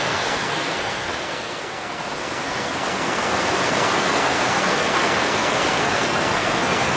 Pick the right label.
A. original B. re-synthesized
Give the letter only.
B